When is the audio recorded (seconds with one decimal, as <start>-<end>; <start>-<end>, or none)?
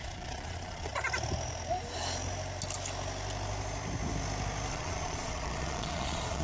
0.9-4.7